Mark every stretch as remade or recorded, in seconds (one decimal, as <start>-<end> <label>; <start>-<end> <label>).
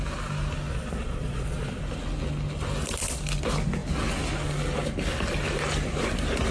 0.0-0.7 recorded; 0.7-1.8 remade; 1.8-6.5 recorded